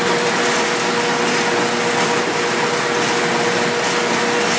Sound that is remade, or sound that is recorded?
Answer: recorded